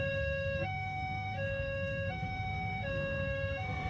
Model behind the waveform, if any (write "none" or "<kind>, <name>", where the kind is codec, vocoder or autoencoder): codec, SNAC